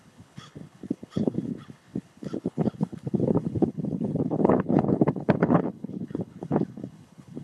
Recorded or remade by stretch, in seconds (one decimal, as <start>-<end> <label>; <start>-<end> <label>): 0.0-7.4 remade